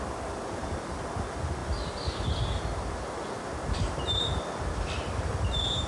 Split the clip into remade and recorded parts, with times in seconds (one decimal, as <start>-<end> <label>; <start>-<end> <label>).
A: 0.0-5.9 recorded